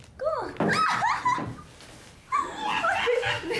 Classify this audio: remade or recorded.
recorded